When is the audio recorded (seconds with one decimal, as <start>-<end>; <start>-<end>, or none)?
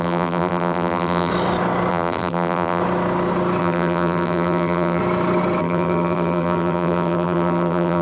1.3-1.9; 2.8-3.6; 5.0-5.6